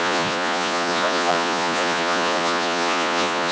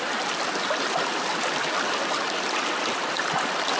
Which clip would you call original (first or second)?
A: second